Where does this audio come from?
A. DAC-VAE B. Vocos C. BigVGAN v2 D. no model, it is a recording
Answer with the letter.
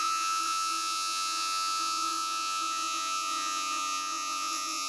B